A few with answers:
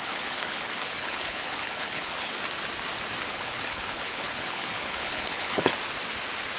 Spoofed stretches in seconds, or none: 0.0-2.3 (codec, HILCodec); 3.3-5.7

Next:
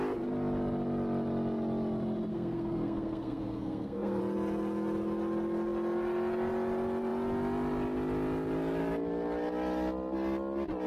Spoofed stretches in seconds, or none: 2.3-4.2 (codec, SNAC)

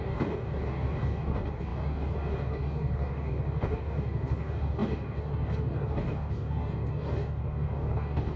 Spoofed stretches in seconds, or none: 0.0-8.4 (codec, DAC)

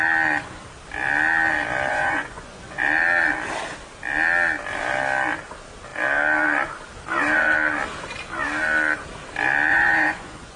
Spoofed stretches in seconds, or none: 1.9-2.8 (vocoder, Vocos); 9.7-10.6